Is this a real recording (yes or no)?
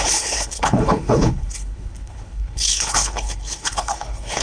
no